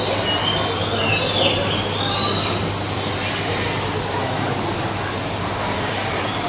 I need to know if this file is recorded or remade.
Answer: recorded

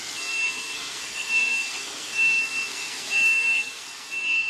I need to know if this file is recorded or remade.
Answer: remade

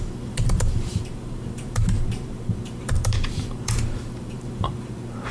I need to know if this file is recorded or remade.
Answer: remade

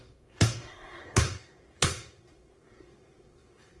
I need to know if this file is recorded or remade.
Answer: remade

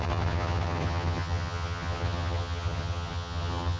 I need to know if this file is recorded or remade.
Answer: remade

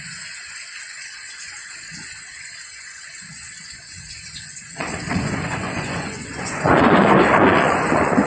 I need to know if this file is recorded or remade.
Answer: remade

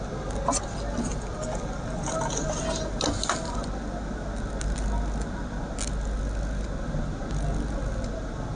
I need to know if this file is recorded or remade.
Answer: recorded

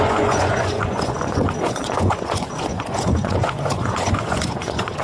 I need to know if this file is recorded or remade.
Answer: remade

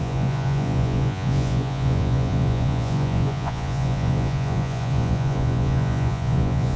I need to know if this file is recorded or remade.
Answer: remade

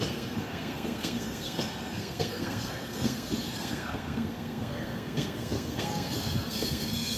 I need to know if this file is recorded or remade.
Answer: remade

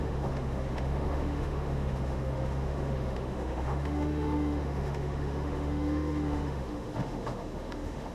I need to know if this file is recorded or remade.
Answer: remade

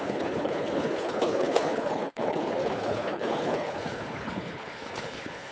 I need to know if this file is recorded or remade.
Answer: remade